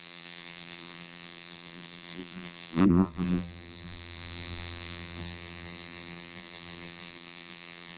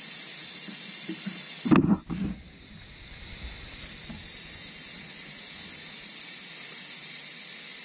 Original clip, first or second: second